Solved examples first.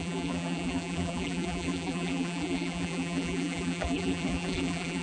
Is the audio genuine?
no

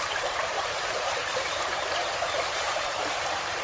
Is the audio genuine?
no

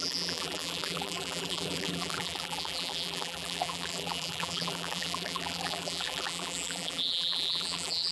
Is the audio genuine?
no